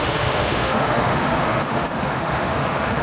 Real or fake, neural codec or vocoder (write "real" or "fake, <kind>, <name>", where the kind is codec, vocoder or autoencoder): fake, autoencoder, DAC-VAE